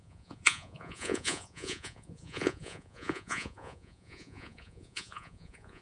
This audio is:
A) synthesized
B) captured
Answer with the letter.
A